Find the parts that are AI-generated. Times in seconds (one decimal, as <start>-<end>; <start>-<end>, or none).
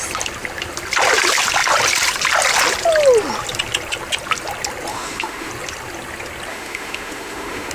4.9-5.5; 6.5-7.7